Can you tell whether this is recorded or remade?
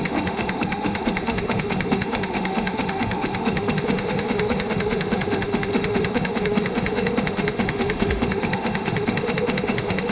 remade